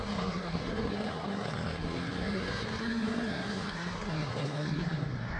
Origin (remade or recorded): remade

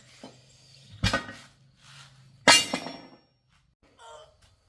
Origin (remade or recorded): recorded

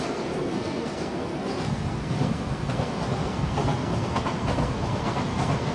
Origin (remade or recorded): remade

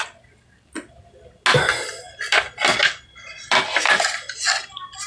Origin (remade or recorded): recorded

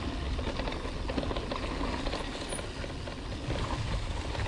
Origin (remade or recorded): recorded